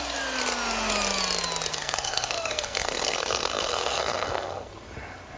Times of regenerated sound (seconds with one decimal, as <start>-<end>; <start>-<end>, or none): 1.7-4.7

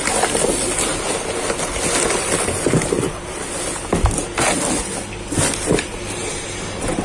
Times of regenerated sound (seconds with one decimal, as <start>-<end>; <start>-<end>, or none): 6.2-7.0

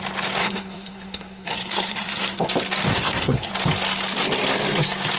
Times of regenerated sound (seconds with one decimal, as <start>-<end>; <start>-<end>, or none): 0.4-2.5; 2.9-3.5

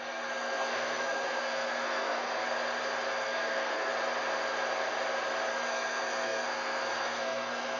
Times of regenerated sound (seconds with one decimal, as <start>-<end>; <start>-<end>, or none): 0.0-2.4; 3.1-3.9; 5.5-7.8

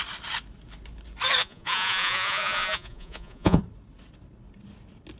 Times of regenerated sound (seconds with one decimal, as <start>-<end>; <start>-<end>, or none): 1.4-3.6

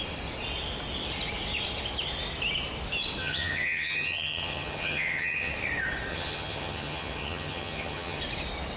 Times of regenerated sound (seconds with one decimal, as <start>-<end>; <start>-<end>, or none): 3.2-5.5; 6.1-8.2

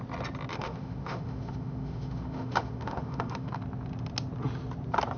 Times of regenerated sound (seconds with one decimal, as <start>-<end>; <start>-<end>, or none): 0.5-3.6